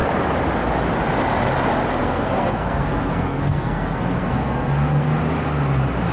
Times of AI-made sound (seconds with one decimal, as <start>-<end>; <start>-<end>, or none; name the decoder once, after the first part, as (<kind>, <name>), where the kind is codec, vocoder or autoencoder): 2.0-5.2 (codec, SNAC)